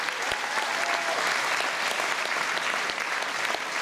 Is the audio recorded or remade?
recorded